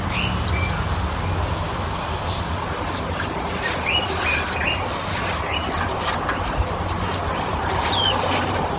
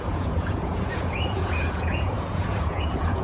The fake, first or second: second